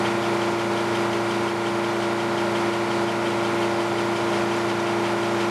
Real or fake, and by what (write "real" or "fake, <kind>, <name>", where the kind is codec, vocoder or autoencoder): real